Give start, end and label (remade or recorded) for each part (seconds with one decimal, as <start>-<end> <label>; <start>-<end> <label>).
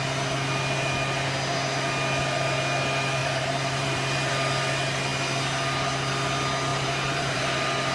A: 0.0-3.2 recorded; 3.2-4.3 remade; 4.3-6.7 recorded; 6.7-7.4 remade; 7.4-7.9 recorded